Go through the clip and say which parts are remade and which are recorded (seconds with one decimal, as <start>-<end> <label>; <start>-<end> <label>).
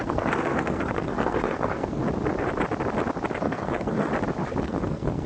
0.0-2.0 remade; 2.0-3.4 recorded; 3.4-4.1 remade; 4.1-4.6 recorded; 4.6-5.3 remade